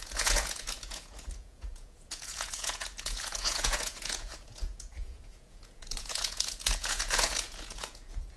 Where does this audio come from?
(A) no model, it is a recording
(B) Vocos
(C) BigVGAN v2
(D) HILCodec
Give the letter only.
B